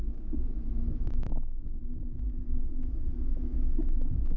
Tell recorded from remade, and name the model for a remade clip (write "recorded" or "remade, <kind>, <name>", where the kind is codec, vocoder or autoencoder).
remade, autoencoder, DAC-VAE